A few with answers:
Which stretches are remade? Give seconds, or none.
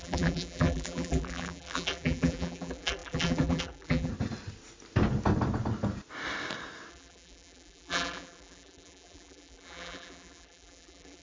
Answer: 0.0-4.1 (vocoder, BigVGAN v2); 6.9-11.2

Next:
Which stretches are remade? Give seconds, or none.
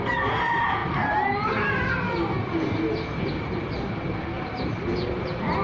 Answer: none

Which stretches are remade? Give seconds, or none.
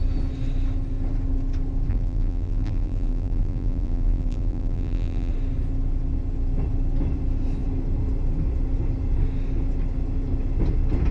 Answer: 1.9-5.3 (vocoder, BigVGAN v2)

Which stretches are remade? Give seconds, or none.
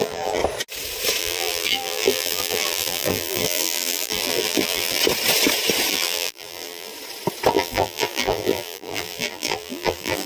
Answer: 0.0-0.4 (vocoder, BigVGAN v2); 1.2-5.0; 5.9-6.9; 7.5-10.3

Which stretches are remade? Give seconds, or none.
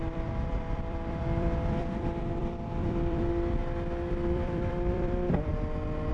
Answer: 0.0-3.6 (vocoder, BigVGAN v2); 4.1-5.5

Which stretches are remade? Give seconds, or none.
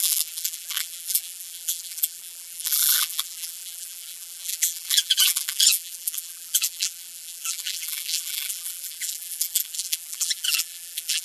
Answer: 0.0-11.2 (vocoder, BigVGAN v2)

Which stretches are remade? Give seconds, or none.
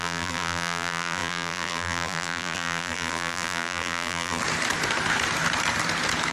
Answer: 0.0-4.4 (vocoder, BigVGAN v2)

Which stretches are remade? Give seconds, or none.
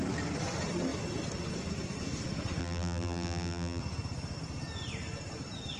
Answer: 2.6-3.8 (vocoder, BigVGAN v2)